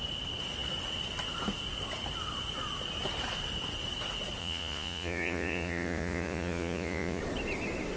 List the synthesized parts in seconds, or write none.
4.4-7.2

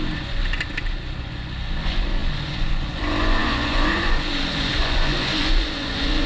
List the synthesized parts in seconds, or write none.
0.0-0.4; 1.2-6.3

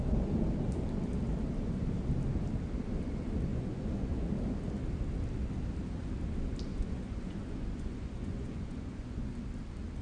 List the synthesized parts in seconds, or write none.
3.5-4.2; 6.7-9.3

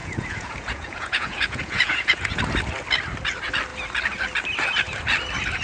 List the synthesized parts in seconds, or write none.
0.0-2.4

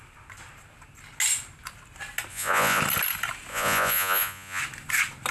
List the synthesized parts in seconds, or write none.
2.3-2.8; 3.5-4.6

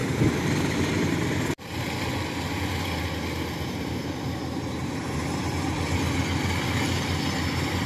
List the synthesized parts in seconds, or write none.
none

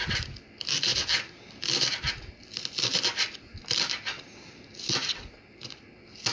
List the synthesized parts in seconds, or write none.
none

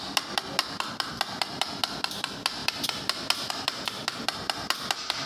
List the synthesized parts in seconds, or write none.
none